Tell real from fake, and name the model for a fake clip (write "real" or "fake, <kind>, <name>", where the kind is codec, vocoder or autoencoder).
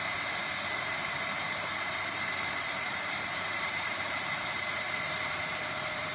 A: fake, vocoder, BigVGAN v2